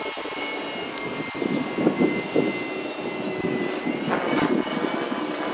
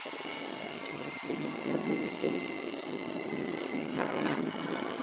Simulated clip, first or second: second